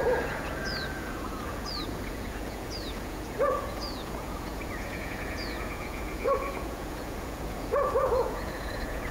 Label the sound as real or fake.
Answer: fake